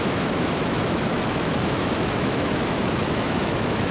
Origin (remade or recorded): remade